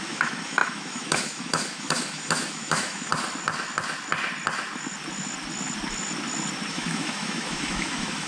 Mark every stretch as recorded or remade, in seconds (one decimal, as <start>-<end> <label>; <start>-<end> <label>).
0.0-3.1 remade; 3.1-6.7 recorded; 6.7-8.3 remade